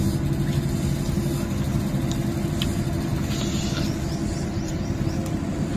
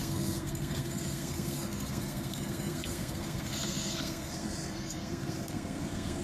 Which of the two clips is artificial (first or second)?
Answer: second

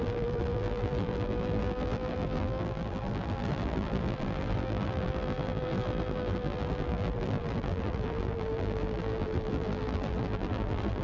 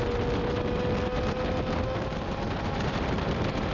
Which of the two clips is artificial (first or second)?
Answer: first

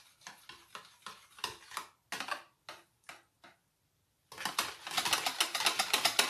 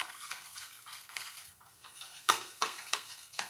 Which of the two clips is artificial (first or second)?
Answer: second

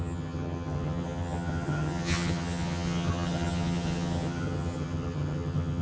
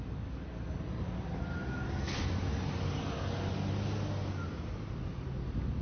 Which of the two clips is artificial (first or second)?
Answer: first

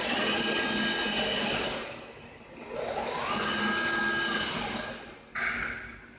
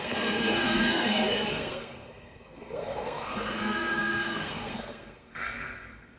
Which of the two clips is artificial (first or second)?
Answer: second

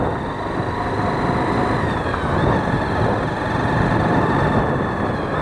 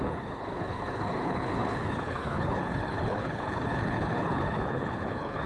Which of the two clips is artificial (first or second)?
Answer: second